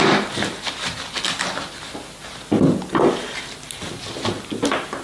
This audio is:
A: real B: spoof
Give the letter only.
A